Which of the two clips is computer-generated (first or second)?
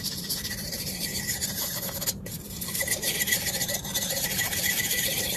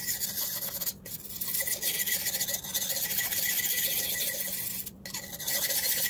first